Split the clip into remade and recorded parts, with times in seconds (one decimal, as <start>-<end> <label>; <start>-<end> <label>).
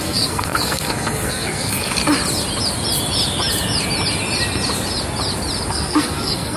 0.0-2.0 remade; 2.0-5.7 recorded; 5.7-6.6 remade